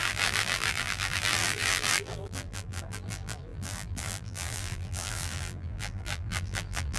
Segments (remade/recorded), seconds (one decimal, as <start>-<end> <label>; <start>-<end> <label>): 0.0-7.0 remade